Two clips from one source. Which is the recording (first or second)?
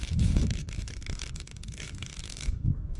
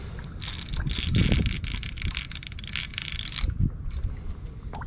second